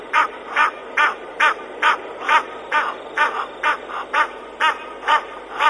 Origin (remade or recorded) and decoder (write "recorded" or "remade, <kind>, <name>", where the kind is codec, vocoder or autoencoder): remade, vocoder, BigVGAN v2